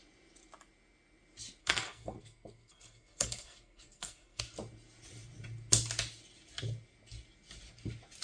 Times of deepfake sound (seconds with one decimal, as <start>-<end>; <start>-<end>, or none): 1.6-4.4